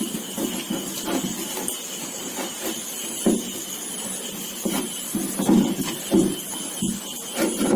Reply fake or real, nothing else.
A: real